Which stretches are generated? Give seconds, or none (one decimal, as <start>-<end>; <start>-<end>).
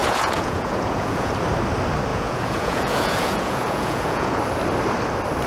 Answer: 0.0-1.3; 2.1-4.4